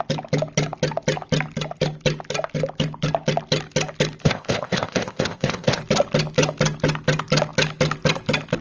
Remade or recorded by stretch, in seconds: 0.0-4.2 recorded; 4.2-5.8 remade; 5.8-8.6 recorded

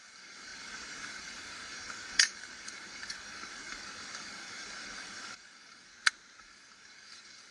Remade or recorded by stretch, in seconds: 0.0-5.9 remade; 5.9-6.4 recorded; 6.4-7.5 remade

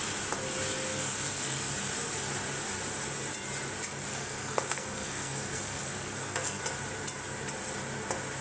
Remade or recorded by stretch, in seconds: 0.0-0.9 recorded; 0.9-1.7 remade; 1.7-4.1 recorded; 4.1-6.6 remade; 6.6-8.4 recorded

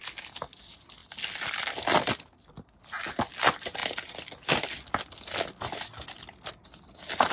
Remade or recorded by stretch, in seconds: 0.0-7.3 recorded